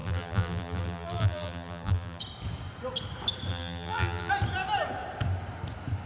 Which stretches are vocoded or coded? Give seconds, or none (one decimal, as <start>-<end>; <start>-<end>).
0.0-2.2; 3.5-4.3